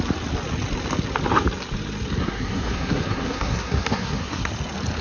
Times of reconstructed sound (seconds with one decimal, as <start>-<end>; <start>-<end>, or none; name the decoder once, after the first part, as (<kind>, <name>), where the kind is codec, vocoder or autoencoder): 2.2-4.5 (codec, SNAC)